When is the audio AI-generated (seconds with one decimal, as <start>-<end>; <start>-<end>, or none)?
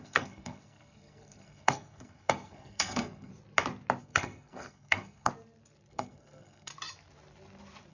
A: 0.0-3.3; 4.0-5.3; 5.9-6.7